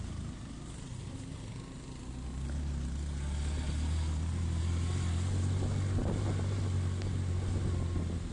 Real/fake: real